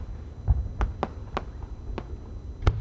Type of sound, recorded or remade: recorded